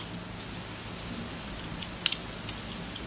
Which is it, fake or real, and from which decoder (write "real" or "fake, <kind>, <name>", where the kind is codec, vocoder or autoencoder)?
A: real